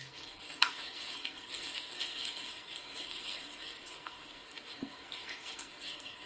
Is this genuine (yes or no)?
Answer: no